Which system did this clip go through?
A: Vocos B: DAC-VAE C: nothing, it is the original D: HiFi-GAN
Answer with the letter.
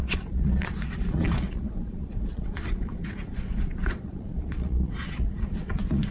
A